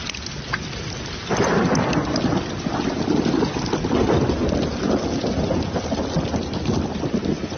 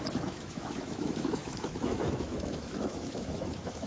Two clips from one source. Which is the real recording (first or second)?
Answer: first